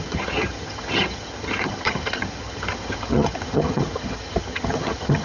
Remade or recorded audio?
remade